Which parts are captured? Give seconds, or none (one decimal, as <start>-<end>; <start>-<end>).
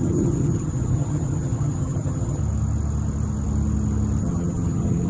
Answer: 2.4-4.2